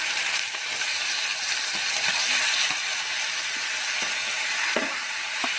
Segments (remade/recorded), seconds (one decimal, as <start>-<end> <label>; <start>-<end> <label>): 0.0-1.0 remade; 1.0-4.4 recorded; 4.4-5.6 remade